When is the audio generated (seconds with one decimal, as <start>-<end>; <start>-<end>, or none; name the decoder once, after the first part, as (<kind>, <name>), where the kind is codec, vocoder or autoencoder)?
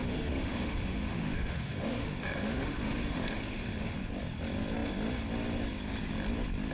0.0-4.0 (autoencoder, DAC-VAE)